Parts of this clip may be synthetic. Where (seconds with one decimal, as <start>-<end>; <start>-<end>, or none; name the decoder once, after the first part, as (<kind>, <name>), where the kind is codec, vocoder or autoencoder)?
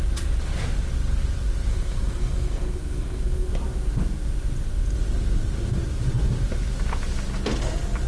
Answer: 1.7-3.5 (codec, SNAC)